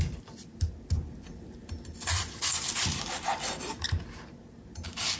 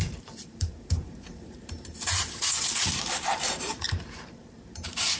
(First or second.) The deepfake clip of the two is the second